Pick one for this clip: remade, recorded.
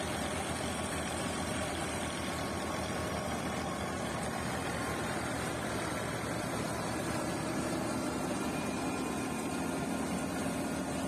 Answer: remade